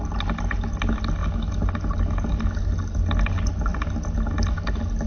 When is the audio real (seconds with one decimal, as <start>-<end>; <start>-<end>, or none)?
0.0-5.1